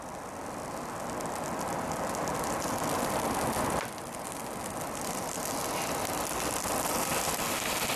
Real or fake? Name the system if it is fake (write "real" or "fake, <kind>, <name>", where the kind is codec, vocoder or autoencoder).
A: real